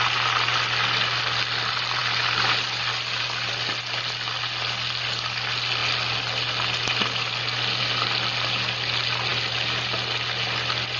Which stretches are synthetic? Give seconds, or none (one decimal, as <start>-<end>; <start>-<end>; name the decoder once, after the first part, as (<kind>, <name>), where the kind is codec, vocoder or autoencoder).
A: none